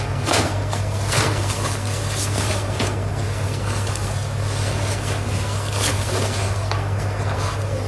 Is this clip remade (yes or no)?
yes